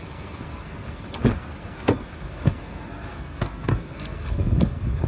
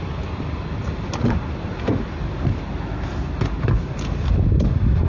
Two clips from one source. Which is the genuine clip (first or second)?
second